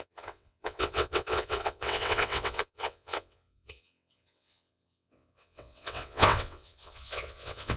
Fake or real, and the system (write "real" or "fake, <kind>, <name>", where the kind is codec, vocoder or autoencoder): fake, vocoder, WaveNeXt